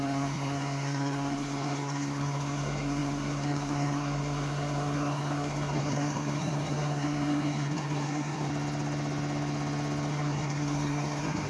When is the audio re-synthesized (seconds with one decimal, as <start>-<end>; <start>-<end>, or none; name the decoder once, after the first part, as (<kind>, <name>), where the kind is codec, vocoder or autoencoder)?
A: 0.0-8.5 (codec, SNAC); 10.1-11.5